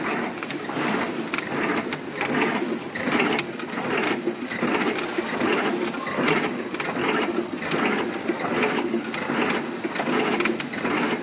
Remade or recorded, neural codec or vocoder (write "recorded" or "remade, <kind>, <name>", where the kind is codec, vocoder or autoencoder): recorded